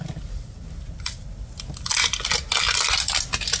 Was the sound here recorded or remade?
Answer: recorded